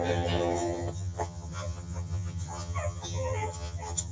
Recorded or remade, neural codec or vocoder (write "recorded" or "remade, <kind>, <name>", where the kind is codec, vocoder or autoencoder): remade, vocoder, HiFi-GAN